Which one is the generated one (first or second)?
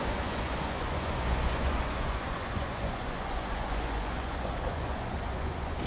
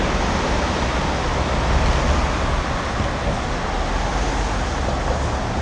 first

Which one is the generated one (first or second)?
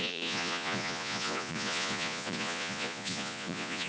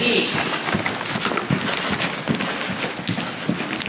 first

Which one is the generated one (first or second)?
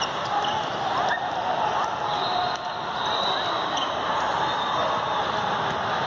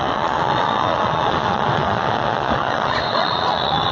second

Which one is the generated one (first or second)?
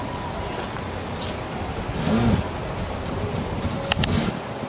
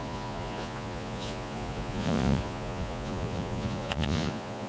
second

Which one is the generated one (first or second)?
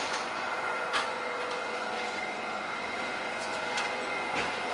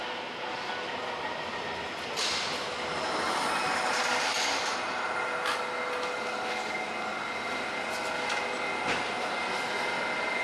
first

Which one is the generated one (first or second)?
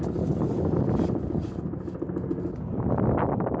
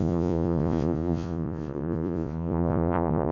second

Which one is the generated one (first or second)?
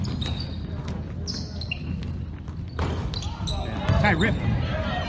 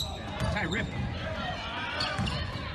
second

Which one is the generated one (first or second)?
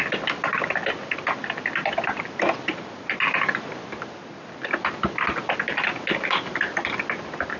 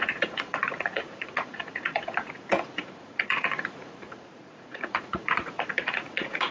second